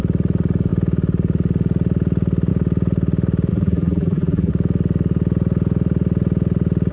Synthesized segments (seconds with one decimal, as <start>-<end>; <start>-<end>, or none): 3.5-4.5